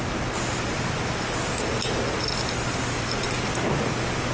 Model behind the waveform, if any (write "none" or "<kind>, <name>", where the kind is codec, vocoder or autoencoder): none